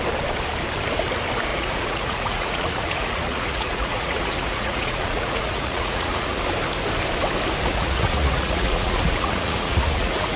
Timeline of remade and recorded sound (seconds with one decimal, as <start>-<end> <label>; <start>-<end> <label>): 0.0-1.5 recorded; 1.5-6.4 remade; 6.4-7.7 recorded; 7.7-10.4 remade